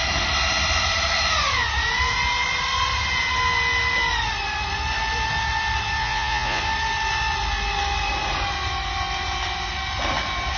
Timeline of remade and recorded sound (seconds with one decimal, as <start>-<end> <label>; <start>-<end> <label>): 0.0-6.0 recorded; 6.0-6.6 remade; 6.6-10.6 recorded